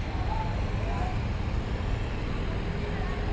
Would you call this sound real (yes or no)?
yes